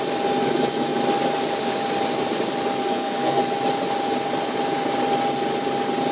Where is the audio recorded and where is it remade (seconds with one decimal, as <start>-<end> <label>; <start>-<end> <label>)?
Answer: 0.0-2.8 recorded; 2.8-3.4 remade; 3.4-6.1 recorded